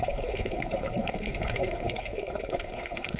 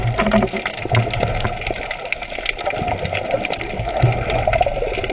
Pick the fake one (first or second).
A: first